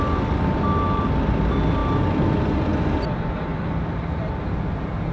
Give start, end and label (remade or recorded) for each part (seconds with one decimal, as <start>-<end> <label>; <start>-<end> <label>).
0.0-1.8 recorded; 1.8-2.4 remade; 2.4-3.5 recorded; 3.5-4.4 remade; 4.4-5.1 recorded